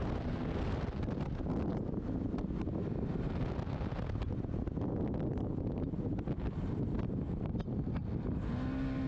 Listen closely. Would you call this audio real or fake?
real